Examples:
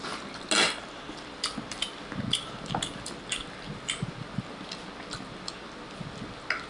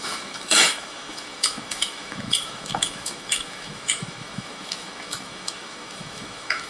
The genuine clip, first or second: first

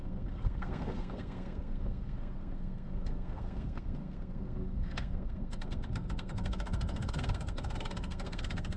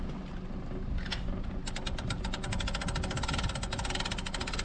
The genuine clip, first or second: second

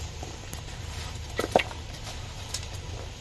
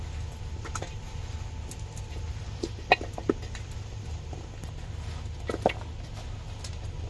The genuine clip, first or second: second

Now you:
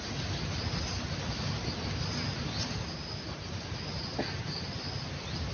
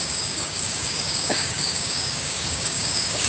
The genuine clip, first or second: first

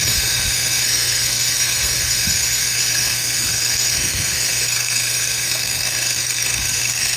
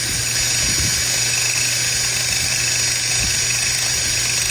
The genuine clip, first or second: second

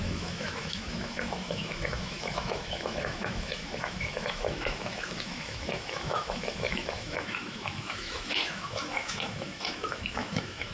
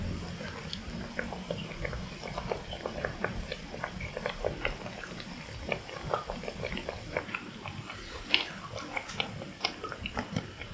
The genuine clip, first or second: second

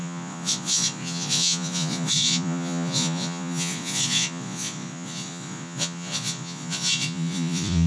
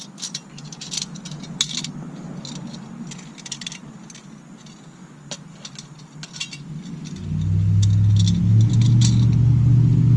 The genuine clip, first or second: second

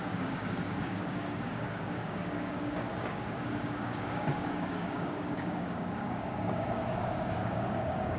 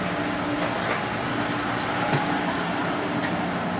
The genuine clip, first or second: second